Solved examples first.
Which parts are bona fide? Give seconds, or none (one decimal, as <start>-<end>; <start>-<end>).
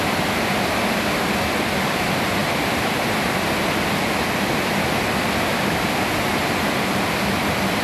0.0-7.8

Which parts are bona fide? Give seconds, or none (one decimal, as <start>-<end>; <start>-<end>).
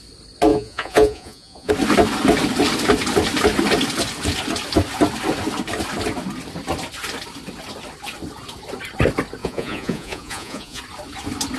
0.0-0.5; 1.7-9.4; 10.8-11.6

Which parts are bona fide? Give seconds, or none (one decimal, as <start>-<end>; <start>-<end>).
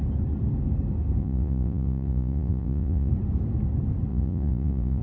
0.0-1.2; 3.1-4.1